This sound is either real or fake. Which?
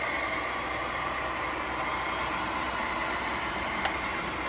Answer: fake